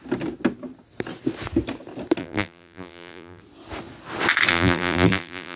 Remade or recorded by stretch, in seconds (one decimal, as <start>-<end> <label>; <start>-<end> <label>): 0.0-2.2 recorded; 2.2-3.4 remade; 3.4-4.5 recorded; 4.5-5.6 remade